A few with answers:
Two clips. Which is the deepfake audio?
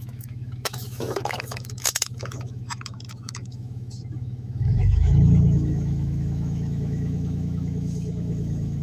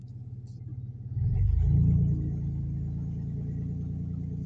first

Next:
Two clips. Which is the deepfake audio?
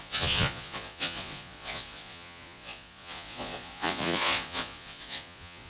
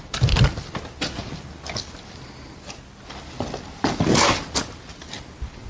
first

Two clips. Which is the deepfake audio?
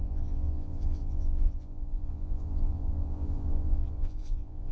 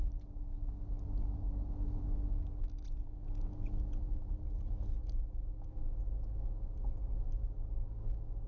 first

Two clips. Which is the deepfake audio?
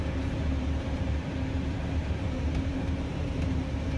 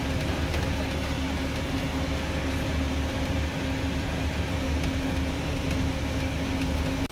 first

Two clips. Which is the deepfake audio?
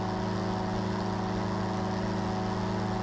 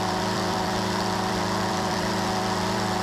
second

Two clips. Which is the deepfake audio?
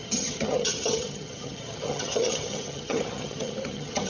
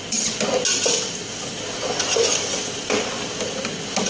first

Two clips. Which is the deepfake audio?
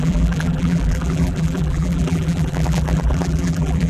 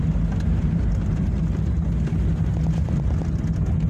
first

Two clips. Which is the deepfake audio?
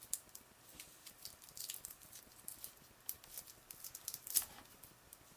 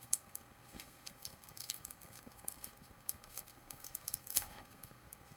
second